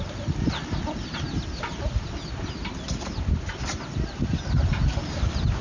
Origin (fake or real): real